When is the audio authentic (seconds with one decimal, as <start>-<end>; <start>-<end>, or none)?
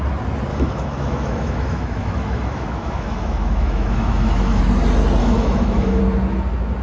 0.0-0.5; 4.6-5.2; 6.0-6.8